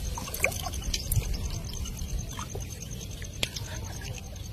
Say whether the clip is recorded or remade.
recorded